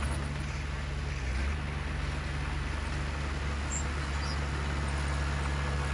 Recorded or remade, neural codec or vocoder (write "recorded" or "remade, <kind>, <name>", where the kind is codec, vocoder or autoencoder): recorded